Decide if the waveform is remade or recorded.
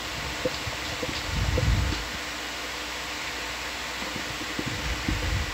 recorded